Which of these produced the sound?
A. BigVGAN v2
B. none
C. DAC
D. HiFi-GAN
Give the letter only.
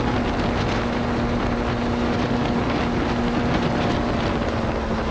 B